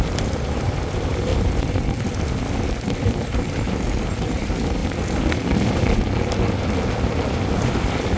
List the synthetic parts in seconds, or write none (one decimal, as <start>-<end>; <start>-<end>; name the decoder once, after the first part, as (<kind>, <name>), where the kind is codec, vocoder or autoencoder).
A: 0.0-1.3 (vocoder, BigVGAN v2); 3.0-4.8; 7.7-8.2